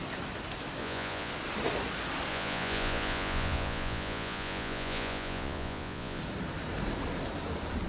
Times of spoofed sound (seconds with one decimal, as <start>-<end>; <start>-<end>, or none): 0.8-1.3; 2.3-6.2